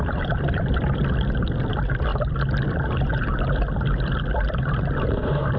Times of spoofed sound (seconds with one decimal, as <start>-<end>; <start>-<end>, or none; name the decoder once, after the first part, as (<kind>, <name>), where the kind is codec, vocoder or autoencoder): none